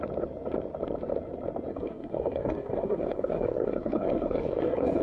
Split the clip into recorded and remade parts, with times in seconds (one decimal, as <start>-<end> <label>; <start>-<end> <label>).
0.0-1.7 recorded; 1.7-5.0 remade